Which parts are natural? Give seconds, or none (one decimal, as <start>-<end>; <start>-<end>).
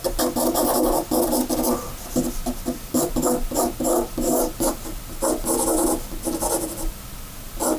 0.0-7.8